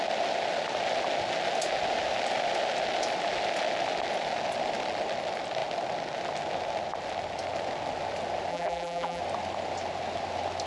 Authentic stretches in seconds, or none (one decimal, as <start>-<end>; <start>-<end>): 0.0-8.5; 9.2-10.7